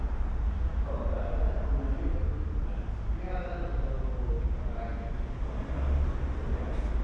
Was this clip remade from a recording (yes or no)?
no